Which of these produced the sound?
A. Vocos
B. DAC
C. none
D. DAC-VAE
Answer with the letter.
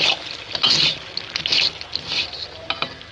C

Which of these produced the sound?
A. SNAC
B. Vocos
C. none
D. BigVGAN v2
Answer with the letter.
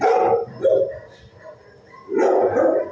C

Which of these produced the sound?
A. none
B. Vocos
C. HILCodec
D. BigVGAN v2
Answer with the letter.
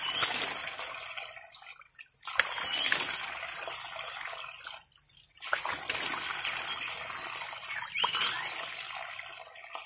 A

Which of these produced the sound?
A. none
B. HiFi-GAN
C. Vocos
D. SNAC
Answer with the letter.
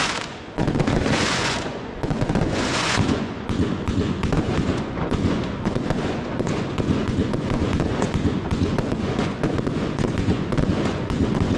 C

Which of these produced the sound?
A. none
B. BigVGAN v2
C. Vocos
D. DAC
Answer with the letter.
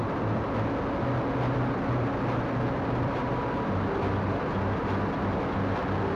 A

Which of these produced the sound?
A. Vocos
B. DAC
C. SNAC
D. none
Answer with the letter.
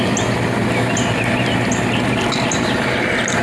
D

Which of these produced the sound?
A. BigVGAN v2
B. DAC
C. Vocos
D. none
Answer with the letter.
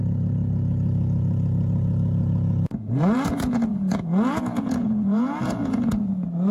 C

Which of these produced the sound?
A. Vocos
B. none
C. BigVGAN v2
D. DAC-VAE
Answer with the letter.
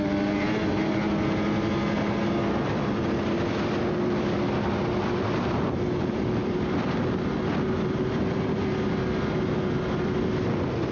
B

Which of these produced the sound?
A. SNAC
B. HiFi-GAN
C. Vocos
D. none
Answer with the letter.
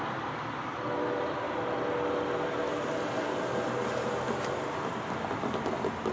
D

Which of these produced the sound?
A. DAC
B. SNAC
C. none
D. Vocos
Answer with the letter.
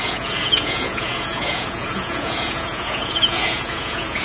D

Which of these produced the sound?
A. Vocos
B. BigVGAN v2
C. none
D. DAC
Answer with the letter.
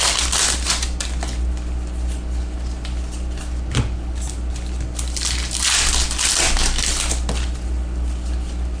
C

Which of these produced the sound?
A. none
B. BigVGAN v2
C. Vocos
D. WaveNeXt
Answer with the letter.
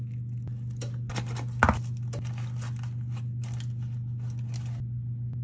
A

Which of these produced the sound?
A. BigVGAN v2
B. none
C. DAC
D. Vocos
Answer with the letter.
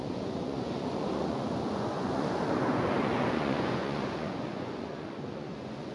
D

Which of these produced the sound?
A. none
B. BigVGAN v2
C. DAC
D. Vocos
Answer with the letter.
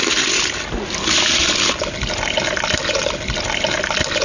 A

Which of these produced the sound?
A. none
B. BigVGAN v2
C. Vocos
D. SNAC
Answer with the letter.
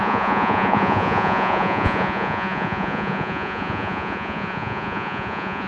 C